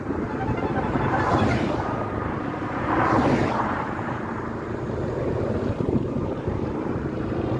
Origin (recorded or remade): remade